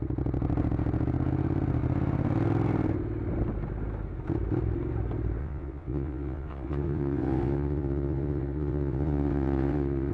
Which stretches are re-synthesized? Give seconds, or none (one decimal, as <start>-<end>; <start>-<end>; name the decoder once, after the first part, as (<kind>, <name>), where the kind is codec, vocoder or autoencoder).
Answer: 5.4-10.1 (vocoder, WaveNeXt)